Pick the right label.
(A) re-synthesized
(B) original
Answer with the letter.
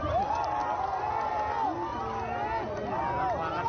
B